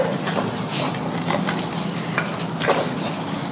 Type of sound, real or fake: real